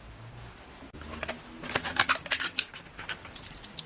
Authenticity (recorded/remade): recorded